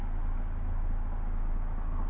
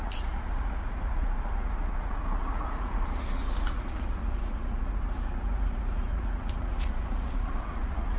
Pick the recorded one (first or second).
first